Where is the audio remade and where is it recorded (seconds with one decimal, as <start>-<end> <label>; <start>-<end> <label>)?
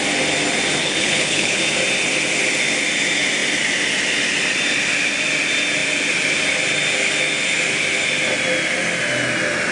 0.0-0.8 recorded; 0.8-1.6 remade; 1.6-9.7 recorded